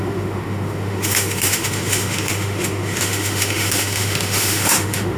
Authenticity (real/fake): fake